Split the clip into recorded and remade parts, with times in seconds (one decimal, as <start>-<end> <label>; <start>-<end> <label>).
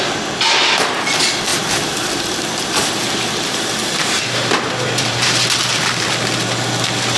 0.0-1.5 recorded; 1.5-5.8 remade; 5.8-7.2 recorded